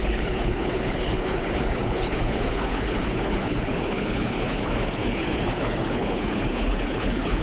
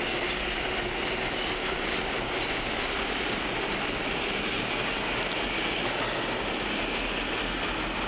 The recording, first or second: second